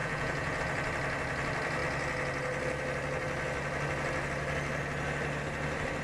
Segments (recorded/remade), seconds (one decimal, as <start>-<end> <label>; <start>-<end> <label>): 0.0-0.6 remade; 0.6-6.0 recorded